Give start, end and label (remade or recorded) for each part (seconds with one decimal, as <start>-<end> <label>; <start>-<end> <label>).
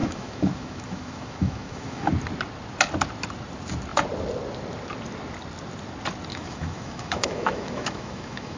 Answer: 0.0-2.1 remade; 2.1-6.3 recorded; 6.3-8.6 remade